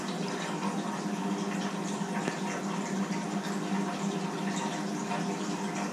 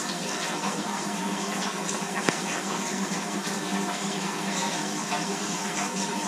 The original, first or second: first